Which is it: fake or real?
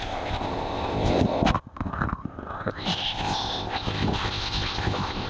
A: fake